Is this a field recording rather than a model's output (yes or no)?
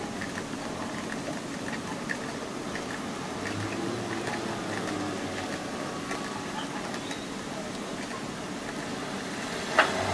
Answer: yes